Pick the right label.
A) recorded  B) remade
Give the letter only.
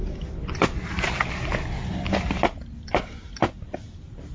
A